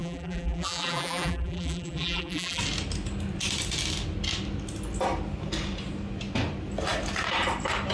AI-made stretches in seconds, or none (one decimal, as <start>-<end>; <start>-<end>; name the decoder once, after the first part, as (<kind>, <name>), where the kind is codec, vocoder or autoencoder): 0.0-2.6 (vocoder, BigVGAN v2)